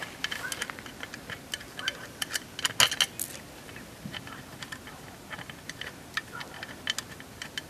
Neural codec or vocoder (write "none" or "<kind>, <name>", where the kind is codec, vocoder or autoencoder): none